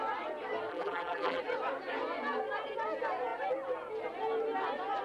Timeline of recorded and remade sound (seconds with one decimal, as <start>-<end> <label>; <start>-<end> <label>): 0.0-0.7 recorded; 0.7-1.4 remade; 1.4-5.0 recorded